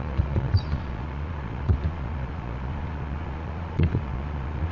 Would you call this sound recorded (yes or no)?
no